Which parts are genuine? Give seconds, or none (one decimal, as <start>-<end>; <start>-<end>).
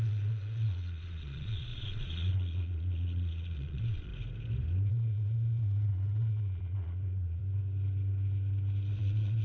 4.1-4.9; 7.4-9.0